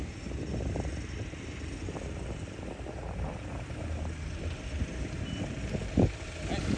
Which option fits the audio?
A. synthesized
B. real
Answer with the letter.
B